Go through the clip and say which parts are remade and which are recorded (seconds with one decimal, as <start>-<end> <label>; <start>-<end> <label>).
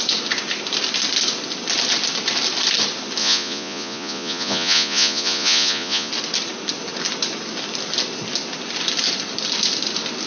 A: 0.0-3.2 recorded; 3.2-6.1 remade; 6.1-10.3 recorded